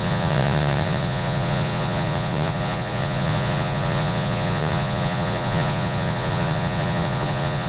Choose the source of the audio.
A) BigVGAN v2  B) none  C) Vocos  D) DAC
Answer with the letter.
C